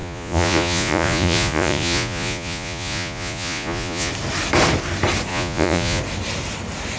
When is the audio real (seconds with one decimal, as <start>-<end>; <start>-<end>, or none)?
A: 4.1-5.3; 6.0-7.0